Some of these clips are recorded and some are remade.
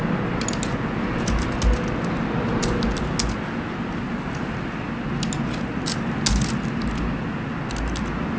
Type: recorded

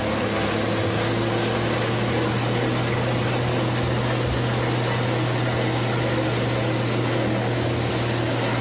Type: recorded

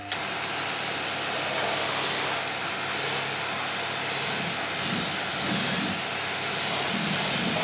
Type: recorded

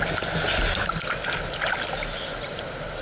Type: recorded